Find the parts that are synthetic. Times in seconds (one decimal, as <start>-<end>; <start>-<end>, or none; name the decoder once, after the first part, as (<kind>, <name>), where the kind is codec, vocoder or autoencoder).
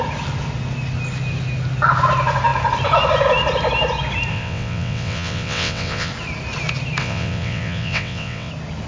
4.3-6.1 (vocoder, WaveNeXt); 7.0-8.5